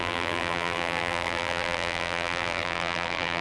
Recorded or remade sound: remade